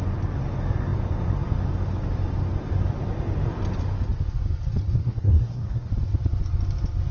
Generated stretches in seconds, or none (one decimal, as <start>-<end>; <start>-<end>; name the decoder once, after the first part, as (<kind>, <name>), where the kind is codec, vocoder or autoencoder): 5.0-5.9 (codec, SNAC)